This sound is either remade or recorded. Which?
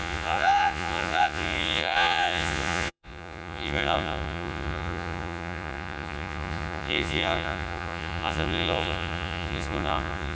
remade